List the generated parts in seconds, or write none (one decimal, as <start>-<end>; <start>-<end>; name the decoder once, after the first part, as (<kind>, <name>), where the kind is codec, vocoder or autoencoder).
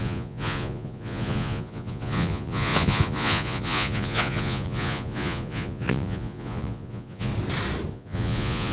0.0-7.3 (vocoder, Vocos); 7.9-8.7